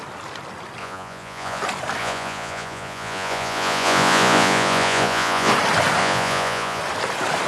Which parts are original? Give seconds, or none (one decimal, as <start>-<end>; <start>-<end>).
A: 0.0-0.8; 1.6-2.0; 5.5-6.0; 6.8-7.5